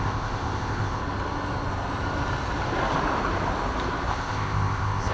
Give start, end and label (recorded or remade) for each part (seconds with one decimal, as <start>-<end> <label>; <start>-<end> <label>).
0.0-1.0 remade; 1.0-4.1 recorded; 4.1-5.1 remade